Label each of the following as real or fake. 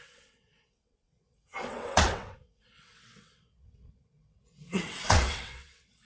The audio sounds fake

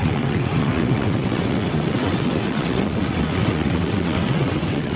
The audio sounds fake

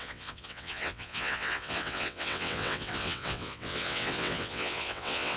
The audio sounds fake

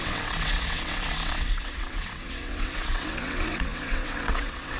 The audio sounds fake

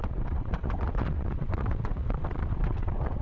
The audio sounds fake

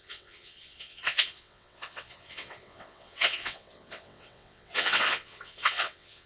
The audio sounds fake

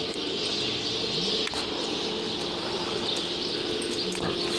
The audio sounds real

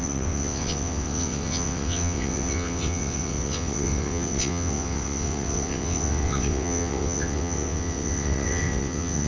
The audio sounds fake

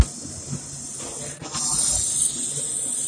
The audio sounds real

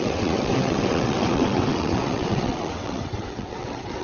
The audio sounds fake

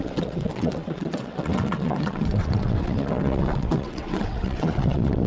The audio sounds fake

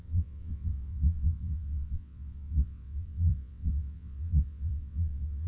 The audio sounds fake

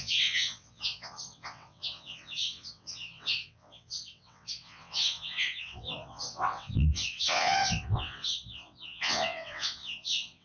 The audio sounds fake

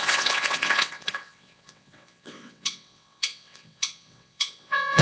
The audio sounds fake